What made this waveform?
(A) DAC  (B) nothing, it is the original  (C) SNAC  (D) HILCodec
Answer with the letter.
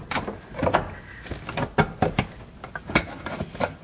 B